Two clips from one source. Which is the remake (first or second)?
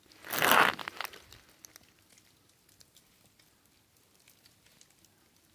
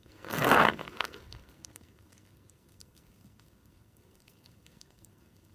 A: second